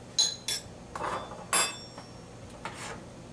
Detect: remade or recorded recorded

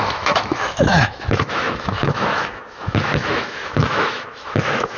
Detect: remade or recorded remade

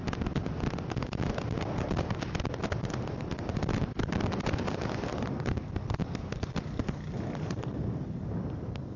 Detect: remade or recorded recorded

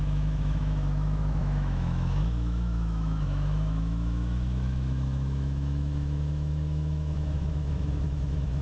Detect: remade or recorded remade